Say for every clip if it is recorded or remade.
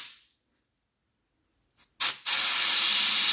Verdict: recorded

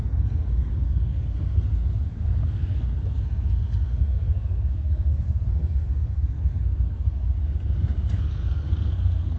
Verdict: remade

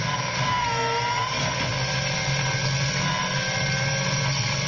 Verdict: recorded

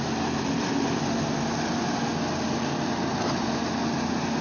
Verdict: recorded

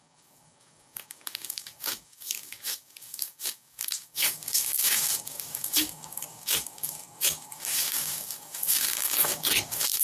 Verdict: remade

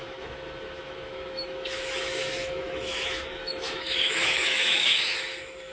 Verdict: remade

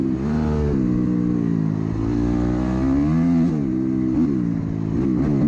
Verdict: recorded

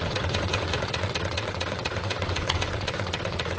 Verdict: remade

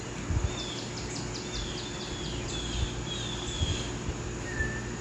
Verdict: recorded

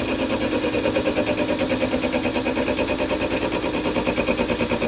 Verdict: recorded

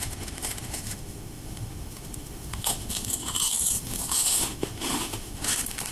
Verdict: remade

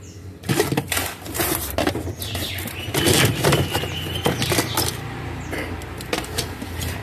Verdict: recorded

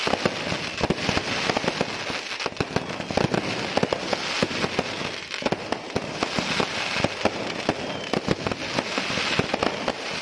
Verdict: recorded